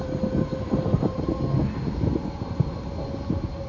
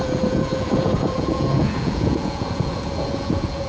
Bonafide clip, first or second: first